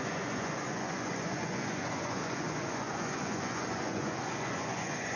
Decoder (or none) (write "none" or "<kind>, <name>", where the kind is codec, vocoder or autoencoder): vocoder, Vocos